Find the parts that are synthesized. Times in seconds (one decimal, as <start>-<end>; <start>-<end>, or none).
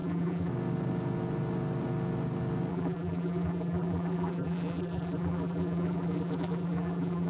0.0-0.5; 2.7-7.3